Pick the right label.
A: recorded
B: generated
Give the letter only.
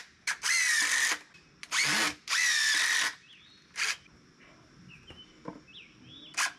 A